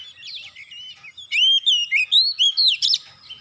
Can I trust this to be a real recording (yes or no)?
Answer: yes